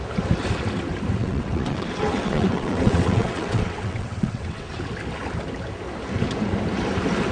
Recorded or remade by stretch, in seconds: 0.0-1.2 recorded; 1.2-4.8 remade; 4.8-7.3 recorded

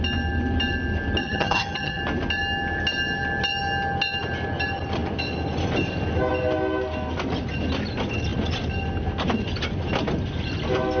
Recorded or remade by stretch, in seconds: 0.0-1.2 recorded; 1.2-2.0 remade; 2.0-11.0 recorded

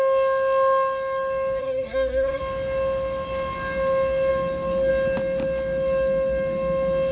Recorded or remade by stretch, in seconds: 0.0-1.6 recorded; 1.6-2.4 remade; 2.4-7.1 recorded

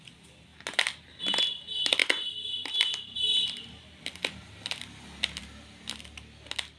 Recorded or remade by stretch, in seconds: 0.0-6.8 recorded

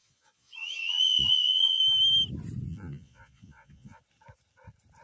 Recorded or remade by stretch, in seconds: 0.0-1.8 remade; 1.8-2.7 recorded; 2.7-4.0 remade; 4.0-5.0 recorded

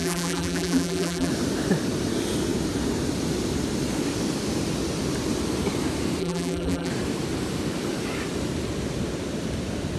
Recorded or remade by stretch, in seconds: 0.0-1.3 remade; 1.3-6.2 recorded; 6.2-6.9 remade; 6.9-10.0 recorded

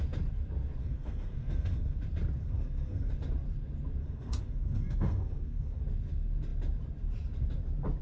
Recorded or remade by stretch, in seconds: 0.0-0.8 recorded; 0.8-2.0 remade; 2.0-2.4 recorded; 2.4-3.1 remade; 3.1-4.0 recorded; 4.0-5.8 remade; 5.8-8.0 recorded